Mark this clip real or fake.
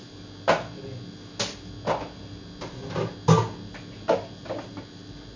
real